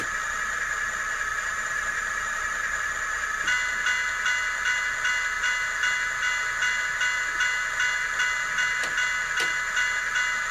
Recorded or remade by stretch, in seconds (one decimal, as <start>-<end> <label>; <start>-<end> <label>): 0.0-1.5 recorded; 1.5-2.5 remade; 2.5-10.5 recorded